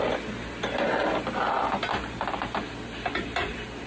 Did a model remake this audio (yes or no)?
no